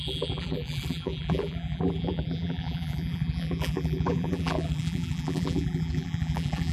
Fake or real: fake